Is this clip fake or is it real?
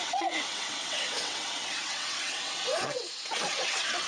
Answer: fake